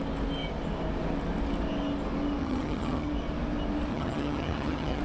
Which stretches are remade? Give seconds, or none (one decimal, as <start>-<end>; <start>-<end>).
2.4-3.1; 3.9-5.0